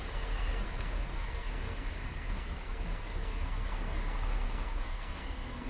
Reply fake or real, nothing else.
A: fake